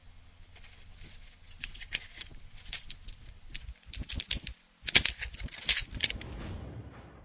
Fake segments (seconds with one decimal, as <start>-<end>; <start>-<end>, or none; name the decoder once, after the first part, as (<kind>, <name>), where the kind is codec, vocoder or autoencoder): 0.0-3.6 (vocoder, Vocos); 6.6-7.2